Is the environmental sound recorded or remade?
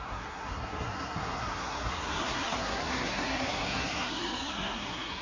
remade